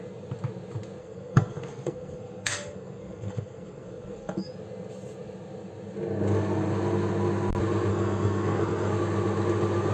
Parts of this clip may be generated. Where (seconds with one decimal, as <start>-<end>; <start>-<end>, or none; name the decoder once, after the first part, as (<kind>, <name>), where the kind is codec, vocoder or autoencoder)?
1.0-4.5 (codec, SNAC); 7.9-8.9